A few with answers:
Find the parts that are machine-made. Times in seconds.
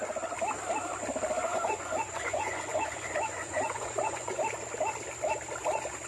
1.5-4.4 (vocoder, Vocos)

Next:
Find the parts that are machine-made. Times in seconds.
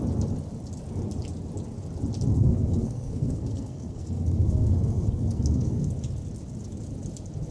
2.3-5.9 (codec, SNAC)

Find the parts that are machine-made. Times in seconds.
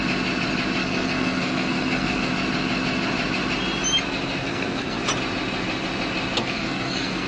0.8-2.3 (codec, SNAC); 4.4-5.0; 6.4-7.3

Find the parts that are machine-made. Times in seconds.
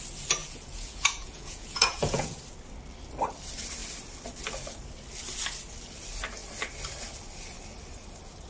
0.4-2.4 (vocoder, Vocos)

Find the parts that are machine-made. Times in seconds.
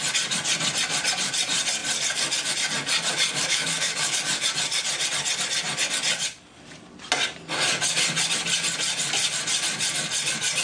3.5-4.2 (codec, DAC)